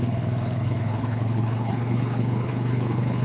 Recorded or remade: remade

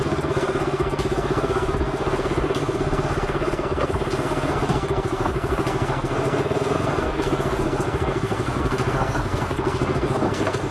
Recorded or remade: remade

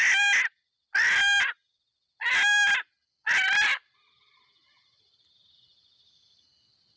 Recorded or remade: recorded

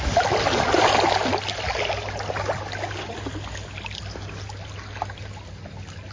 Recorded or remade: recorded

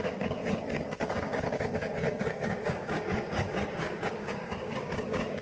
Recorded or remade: remade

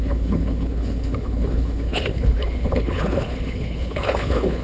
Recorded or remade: remade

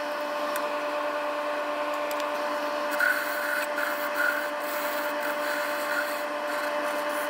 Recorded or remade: recorded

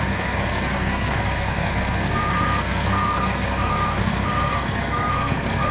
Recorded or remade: remade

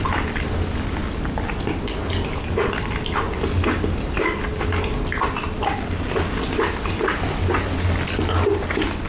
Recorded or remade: recorded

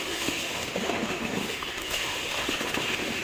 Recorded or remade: remade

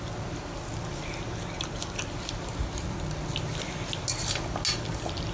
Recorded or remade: recorded